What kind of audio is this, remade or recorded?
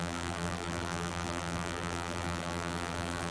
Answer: remade